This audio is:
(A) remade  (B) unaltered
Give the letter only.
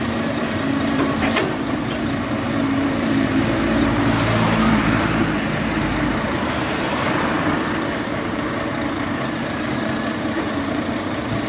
A